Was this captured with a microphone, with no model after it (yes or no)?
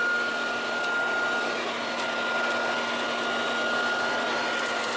yes